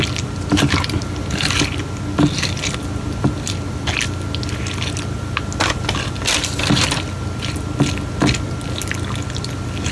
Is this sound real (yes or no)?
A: yes